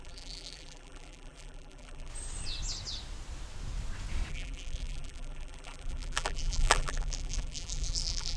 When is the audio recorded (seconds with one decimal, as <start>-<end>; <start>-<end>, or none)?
2.1-4.3